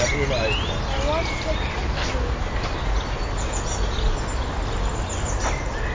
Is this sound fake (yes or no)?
no